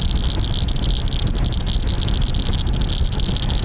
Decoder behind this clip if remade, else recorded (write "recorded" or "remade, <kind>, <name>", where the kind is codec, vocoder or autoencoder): recorded